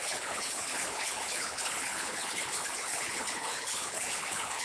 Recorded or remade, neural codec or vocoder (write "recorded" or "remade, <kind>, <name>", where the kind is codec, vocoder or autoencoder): remade, codec, HILCodec